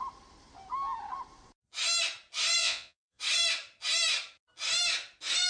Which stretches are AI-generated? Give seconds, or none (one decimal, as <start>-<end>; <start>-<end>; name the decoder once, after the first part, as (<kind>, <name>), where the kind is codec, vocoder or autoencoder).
2.6-3.2 (vocoder, Vocos)